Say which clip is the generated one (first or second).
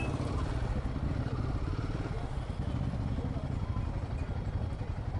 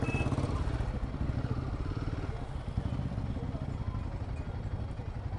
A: first